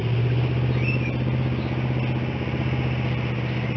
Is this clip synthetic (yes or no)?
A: no